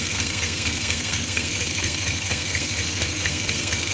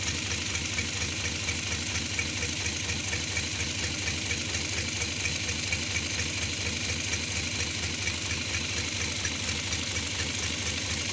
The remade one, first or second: first